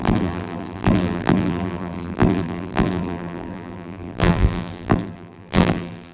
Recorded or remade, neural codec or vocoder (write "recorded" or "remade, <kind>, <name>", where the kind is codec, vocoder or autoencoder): remade, vocoder, BigVGAN v2